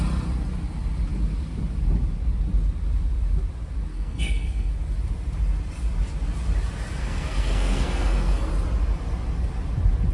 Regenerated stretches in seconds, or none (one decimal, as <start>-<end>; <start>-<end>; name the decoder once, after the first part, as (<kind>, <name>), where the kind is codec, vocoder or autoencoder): 3.9-4.7 (codec, SNAC); 7.0-8.5